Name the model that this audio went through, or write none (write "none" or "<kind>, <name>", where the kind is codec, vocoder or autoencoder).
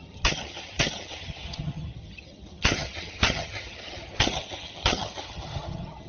vocoder, HiFi-GAN